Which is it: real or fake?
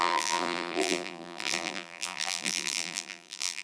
fake